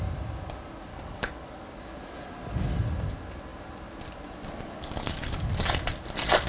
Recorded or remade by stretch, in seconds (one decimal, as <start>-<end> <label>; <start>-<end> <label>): 0.0-0.9 recorded; 0.9-1.5 remade; 1.5-6.5 recorded